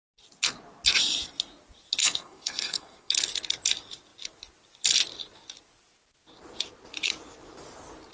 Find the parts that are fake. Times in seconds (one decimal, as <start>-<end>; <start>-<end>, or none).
2.0-3.1